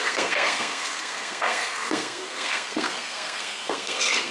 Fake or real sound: fake